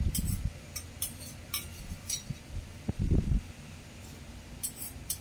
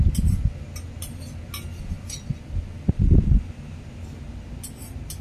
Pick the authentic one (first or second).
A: second